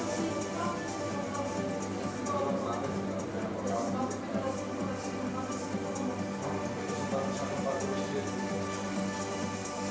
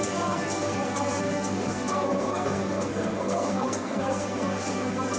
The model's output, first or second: second